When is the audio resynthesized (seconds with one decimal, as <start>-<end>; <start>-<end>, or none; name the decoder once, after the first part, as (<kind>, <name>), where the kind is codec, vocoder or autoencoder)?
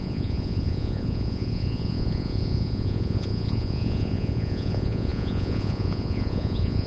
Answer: 0.0-6.9 (vocoder, Vocos)